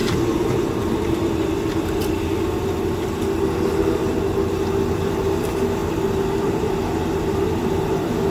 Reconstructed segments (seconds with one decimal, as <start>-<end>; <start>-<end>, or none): 5.0-5.8; 6.4-8.3